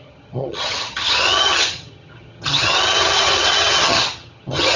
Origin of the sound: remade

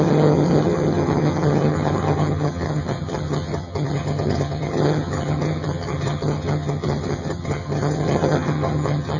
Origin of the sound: remade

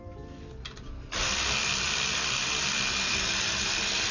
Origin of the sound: recorded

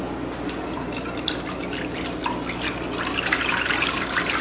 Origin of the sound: recorded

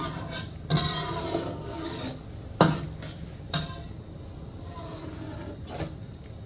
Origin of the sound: recorded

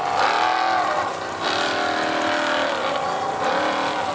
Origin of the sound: recorded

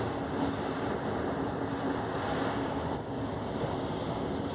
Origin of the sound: recorded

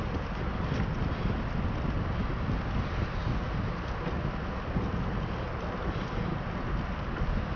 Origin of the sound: recorded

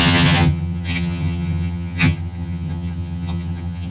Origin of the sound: remade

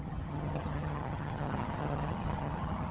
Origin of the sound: remade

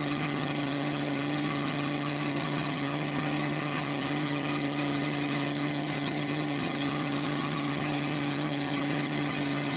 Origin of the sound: remade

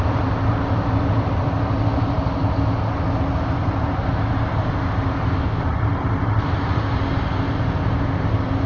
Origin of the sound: recorded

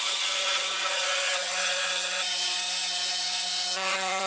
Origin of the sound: remade